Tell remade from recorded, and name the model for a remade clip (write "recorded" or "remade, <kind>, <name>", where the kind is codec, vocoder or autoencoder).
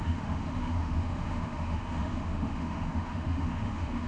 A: remade, autoencoder, DAC-VAE